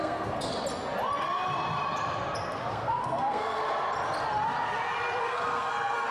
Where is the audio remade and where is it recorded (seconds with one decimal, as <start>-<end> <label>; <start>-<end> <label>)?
0.0-0.5 remade; 0.5-2.7 recorded; 2.7-3.6 remade; 3.6-5.2 recorded; 5.2-6.1 remade